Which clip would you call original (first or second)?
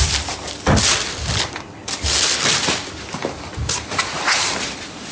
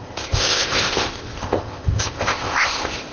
first